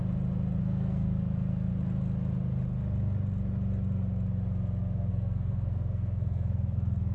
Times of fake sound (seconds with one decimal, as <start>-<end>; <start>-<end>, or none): 0.6-1.7; 5.1-7.1